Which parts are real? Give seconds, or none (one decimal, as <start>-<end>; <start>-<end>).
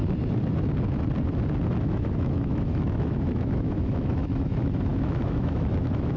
0.0-1.8